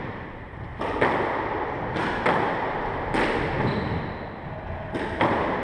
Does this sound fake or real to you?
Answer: real